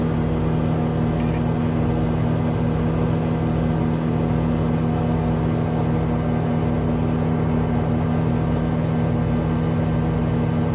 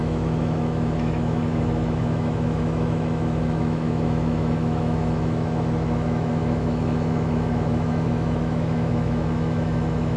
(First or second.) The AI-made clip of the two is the second